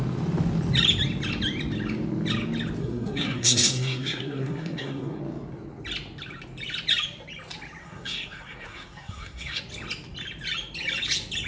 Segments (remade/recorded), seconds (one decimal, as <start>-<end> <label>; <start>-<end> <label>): 0.0-2.8 recorded; 2.8-5.2 remade; 5.2-7.8 recorded; 7.8-9.6 remade; 9.6-11.5 recorded